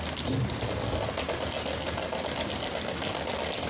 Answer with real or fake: real